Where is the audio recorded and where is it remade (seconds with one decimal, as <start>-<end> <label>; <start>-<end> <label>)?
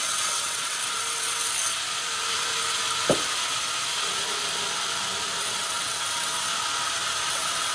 0.0-0.8 remade; 0.8-5.4 recorded; 5.4-6.5 remade; 6.5-7.3 recorded; 7.3-7.7 remade